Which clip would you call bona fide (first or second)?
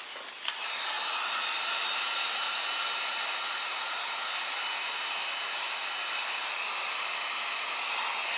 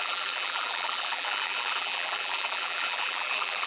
first